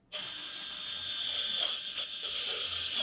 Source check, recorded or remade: recorded